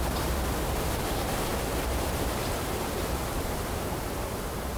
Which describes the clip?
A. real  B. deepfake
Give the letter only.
B